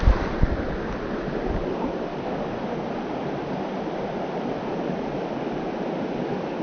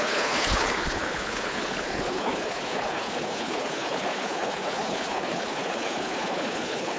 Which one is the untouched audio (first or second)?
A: first